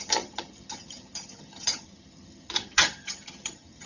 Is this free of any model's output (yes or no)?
no